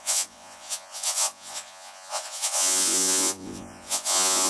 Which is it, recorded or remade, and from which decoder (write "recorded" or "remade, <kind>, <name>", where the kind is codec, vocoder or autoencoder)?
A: remade, vocoder, Vocos